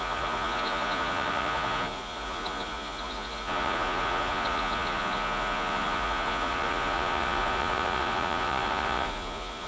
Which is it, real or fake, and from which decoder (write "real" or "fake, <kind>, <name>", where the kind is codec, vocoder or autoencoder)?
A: fake, vocoder, Vocos